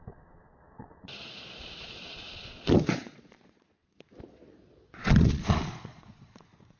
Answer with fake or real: fake